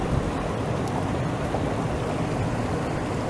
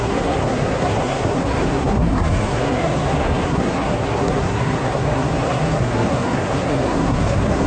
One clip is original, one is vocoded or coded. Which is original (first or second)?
first